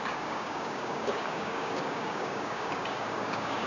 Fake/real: fake